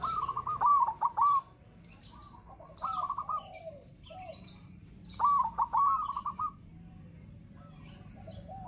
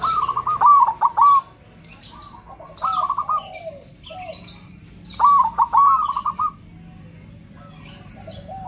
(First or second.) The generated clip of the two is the first